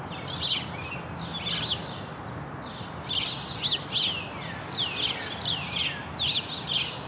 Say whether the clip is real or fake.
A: real